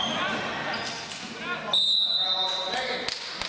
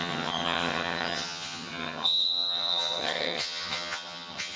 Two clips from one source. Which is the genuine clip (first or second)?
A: first